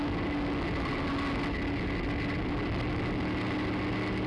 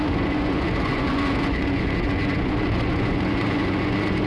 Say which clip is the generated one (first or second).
second